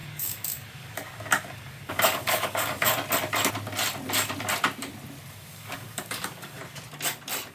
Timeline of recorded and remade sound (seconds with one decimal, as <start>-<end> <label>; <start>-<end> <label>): 0.0-2.9 remade; 2.9-5.3 recorded; 5.3-6.6 remade; 6.6-7.5 recorded